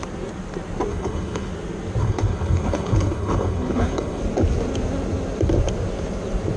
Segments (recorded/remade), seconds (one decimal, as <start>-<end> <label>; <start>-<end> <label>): 0.0-0.9 recorded; 0.9-1.5 remade; 1.5-2.0 recorded; 2.0-4.2 remade; 4.2-6.6 recorded